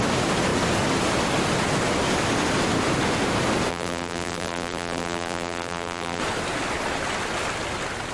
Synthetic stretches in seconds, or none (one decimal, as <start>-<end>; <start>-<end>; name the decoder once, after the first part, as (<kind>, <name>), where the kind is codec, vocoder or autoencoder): 3.7-6.2 (vocoder, BigVGAN v2)